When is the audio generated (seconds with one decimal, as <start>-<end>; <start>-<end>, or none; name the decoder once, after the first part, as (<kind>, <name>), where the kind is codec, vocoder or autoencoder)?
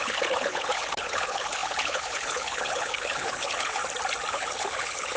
0.0-3.8 (codec, HILCodec); 4.3-5.2